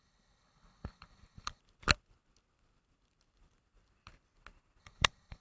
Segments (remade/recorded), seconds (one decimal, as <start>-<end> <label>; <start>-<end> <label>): 0.0-1.6 remade; 1.6-4.8 recorded; 4.8-5.4 remade